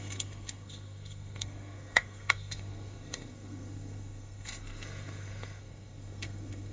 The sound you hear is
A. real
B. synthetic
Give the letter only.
B